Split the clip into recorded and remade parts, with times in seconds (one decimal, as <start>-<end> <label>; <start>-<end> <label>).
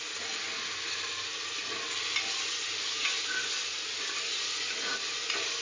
0.0-5.6 recorded